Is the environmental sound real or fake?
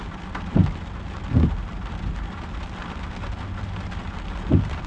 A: real